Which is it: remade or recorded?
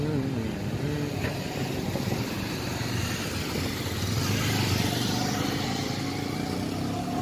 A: recorded